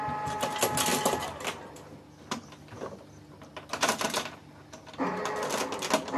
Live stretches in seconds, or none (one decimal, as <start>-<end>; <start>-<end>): 0.0-6.2